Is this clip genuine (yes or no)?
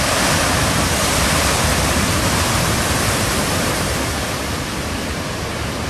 no